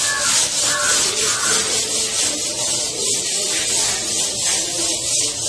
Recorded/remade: recorded